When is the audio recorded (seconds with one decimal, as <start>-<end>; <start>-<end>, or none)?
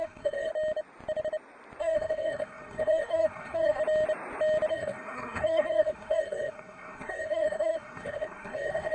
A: 0.5-1.8; 3.8-4.7